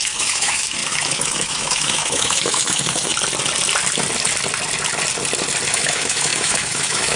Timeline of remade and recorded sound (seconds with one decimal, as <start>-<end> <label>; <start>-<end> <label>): 0.0-3.1 remade; 3.1-5.7 recorded; 5.7-7.2 remade